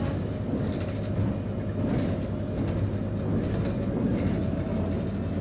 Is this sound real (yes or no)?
yes